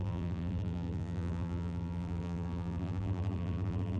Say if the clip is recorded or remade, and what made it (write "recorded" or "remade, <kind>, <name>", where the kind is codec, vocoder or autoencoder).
remade, vocoder, BigVGAN v2